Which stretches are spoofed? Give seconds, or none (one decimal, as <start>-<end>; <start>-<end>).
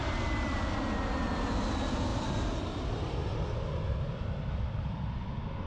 none